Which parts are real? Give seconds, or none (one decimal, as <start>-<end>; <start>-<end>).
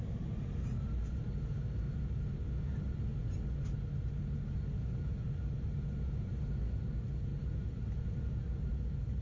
0.0-7.3